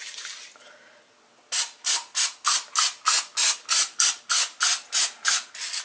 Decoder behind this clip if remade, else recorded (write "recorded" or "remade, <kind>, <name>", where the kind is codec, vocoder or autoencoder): recorded